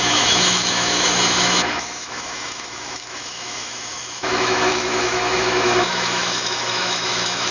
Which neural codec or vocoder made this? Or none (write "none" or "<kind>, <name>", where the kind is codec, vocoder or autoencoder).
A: autoencoder, DAC-VAE